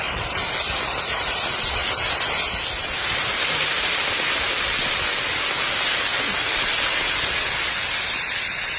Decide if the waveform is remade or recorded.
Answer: recorded